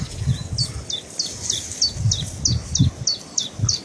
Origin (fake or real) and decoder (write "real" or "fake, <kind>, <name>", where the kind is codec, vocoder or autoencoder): real